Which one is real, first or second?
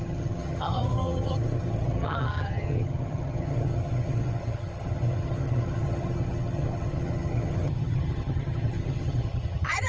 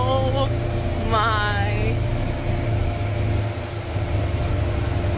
second